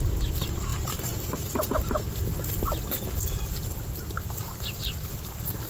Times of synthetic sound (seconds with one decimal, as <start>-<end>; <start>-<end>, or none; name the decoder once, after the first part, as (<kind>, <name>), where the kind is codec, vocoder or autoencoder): none